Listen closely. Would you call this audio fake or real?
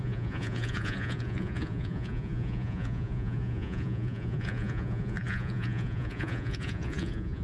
fake